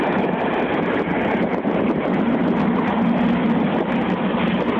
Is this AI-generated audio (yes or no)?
no